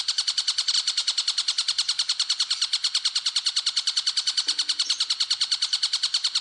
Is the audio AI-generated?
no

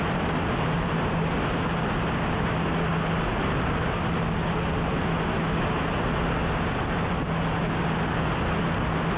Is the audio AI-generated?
no